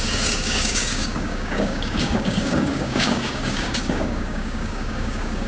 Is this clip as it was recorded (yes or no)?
no